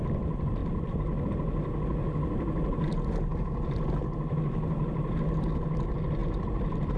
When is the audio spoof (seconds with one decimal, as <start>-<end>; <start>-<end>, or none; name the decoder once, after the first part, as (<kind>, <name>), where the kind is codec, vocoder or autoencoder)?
0.6-1.3 (vocoder, BigVGAN v2); 6.2-7.0